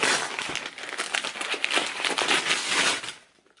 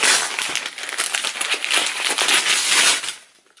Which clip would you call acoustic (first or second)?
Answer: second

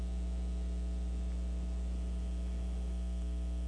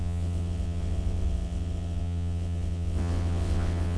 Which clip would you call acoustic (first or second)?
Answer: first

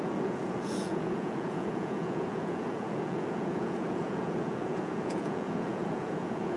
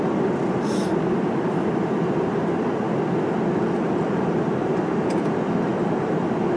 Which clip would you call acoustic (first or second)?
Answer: second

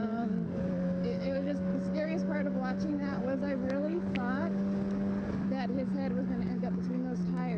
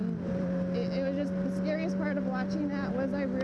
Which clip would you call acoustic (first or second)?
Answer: second